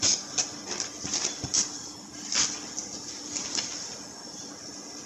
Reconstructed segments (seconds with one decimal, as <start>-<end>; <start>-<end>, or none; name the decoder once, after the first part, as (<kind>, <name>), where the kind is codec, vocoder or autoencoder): none

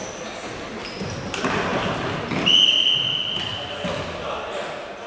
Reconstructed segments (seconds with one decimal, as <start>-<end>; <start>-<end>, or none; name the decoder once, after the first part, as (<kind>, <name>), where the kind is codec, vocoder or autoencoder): none

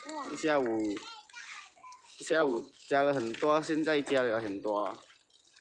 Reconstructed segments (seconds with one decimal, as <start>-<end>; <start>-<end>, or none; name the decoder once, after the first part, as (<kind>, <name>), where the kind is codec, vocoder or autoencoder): 1.4-2.9 (codec, SNAC)

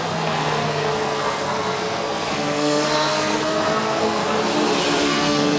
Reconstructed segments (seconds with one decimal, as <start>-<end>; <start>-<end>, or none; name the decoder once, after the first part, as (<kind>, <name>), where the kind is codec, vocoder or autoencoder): 0.0-4.2 (codec, SNAC); 5.0-5.6

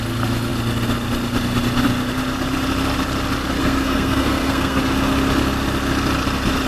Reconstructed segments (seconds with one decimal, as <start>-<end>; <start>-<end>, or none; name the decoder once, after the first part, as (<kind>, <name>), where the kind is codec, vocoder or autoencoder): 3.6-4.8 (codec, SNAC)

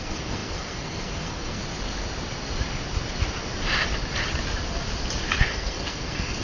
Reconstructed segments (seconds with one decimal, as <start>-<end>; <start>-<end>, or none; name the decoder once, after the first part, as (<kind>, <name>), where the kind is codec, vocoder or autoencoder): 0.0-1.6 (codec, SNAC); 5.4-6.4